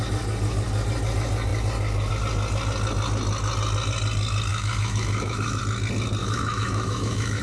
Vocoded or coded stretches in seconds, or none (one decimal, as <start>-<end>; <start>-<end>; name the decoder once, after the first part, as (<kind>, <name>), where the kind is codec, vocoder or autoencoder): 4.5-5.6 (autoencoder, DAC-VAE); 6.2-7.4